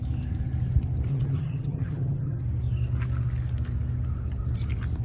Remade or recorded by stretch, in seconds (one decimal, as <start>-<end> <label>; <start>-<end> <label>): 0.0-1.1 recorded; 1.1-2.4 remade; 2.4-5.0 recorded